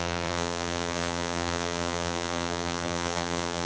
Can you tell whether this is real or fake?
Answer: fake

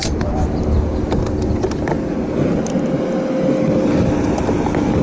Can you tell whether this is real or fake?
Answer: real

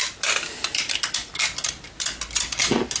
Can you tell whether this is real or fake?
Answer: real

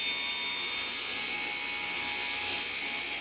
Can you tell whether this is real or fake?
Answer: real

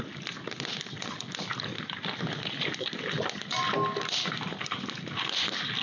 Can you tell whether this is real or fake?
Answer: real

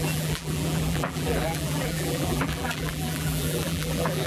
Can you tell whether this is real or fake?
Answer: fake